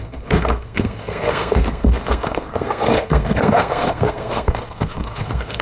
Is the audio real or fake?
fake